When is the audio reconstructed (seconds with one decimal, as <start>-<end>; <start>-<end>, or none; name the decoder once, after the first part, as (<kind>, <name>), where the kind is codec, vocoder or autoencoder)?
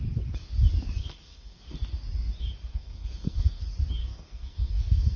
1.0-1.6 (codec, SNAC); 2.7-3.6; 4.0-5.2